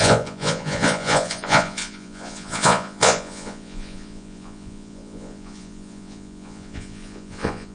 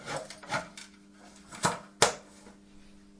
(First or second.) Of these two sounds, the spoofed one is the first